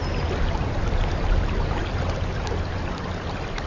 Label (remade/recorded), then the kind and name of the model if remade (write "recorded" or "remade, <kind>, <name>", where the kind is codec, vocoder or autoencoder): recorded